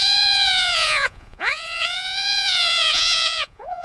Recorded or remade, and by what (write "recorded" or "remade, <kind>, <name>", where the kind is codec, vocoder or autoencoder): remade, vocoder, Vocos